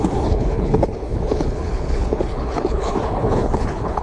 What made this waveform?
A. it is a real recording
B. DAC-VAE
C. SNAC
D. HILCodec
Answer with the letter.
D